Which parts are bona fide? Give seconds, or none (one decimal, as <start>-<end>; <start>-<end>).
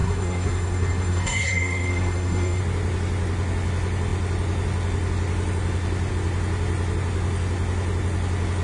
2.6-8.6